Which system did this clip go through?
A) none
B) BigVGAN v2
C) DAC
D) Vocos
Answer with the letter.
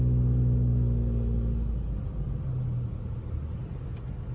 A